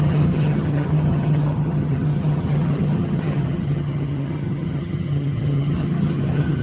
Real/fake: fake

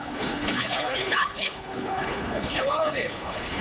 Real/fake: fake